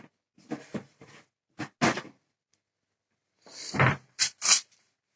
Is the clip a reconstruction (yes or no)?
no